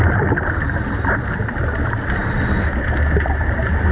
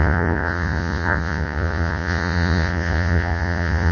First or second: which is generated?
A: second